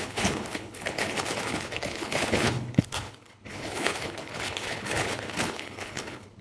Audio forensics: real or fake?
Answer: fake